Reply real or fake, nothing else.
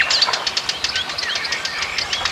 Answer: real